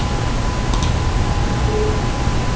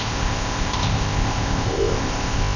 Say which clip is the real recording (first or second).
first